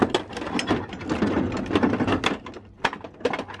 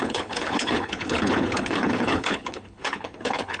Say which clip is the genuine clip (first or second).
first